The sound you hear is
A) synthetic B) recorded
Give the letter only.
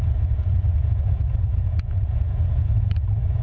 A